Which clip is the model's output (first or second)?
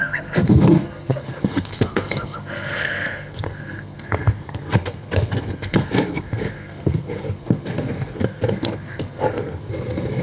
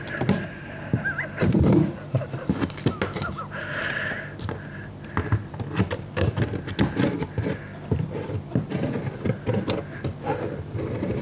first